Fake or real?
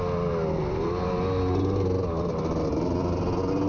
real